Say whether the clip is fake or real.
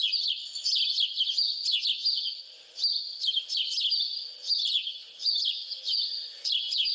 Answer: real